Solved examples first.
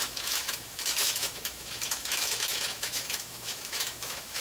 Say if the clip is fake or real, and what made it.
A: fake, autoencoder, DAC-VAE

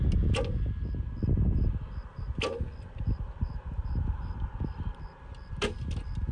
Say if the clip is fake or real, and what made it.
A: real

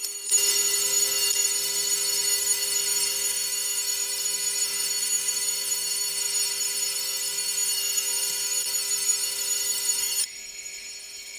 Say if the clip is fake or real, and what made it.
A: fake, codec, SNAC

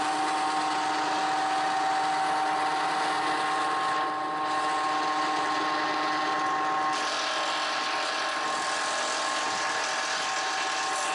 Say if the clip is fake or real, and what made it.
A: real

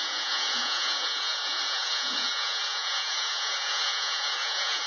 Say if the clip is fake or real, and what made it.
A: fake, vocoder, Vocos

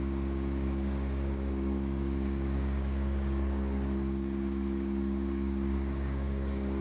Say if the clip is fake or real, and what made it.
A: fake, codec, DAC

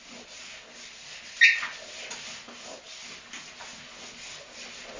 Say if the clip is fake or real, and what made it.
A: real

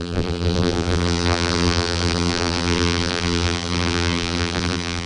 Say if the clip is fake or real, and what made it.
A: fake, vocoder, BigVGAN v2